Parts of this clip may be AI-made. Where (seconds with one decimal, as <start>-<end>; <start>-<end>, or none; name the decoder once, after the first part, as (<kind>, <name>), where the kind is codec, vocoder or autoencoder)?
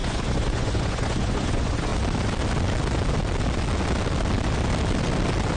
0.0-1.9 (vocoder, Vocos)